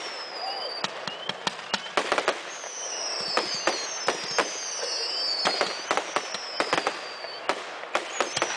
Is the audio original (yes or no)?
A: yes